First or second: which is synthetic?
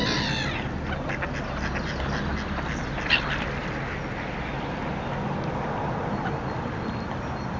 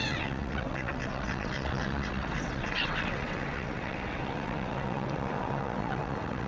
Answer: second